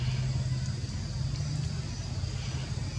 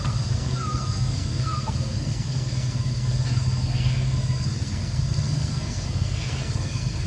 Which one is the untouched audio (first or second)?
first